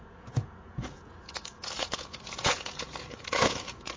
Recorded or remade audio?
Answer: remade